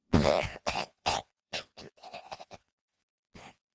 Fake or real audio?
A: fake